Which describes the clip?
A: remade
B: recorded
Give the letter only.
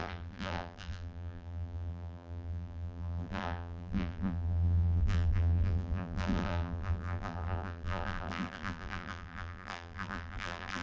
A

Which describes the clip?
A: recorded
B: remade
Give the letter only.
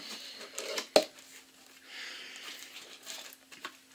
A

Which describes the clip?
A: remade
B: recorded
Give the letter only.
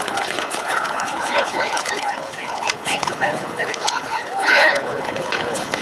A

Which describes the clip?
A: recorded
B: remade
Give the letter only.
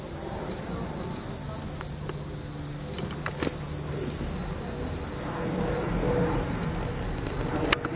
A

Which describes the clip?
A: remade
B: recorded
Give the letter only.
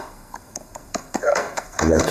A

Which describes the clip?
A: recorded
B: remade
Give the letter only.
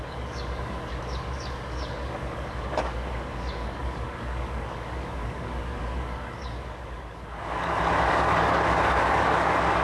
B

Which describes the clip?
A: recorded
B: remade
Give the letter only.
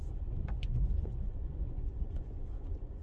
B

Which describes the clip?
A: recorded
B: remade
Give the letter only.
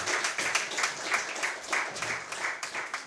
A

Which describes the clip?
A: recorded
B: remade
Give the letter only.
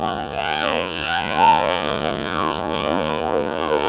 B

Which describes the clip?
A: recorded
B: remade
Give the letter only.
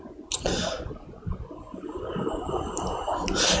A